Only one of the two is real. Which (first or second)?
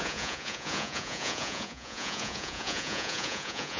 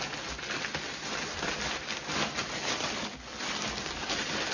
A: second